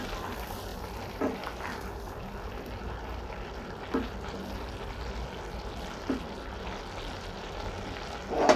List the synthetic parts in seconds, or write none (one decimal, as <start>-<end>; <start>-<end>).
none